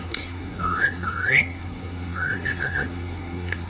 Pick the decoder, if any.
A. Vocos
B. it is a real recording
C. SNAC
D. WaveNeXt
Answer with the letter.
C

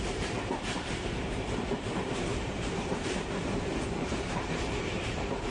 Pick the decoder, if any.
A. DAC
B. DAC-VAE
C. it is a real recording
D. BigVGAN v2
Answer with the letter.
D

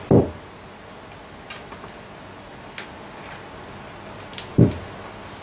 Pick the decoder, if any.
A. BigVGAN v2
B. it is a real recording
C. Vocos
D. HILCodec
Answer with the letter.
B